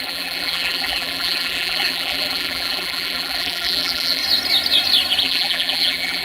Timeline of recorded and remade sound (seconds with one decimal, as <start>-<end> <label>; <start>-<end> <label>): 0.0-4.2 remade; 4.2-5.2 recorded; 5.2-6.2 remade

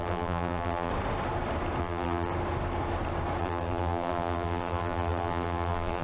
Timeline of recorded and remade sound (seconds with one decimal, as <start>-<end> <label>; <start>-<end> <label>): 0.0-0.9 remade; 0.9-1.8 recorded; 1.8-2.3 remade; 2.3-3.4 recorded; 3.4-6.0 remade